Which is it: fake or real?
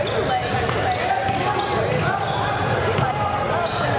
real